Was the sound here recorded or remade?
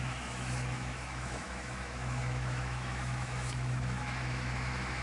remade